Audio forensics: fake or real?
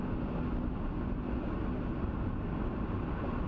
real